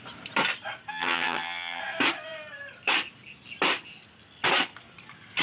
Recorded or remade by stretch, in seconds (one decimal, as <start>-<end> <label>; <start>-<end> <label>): 0.0-0.9 recorded; 0.9-1.8 remade; 1.8-5.4 recorded